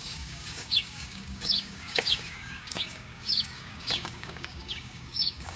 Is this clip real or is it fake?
fake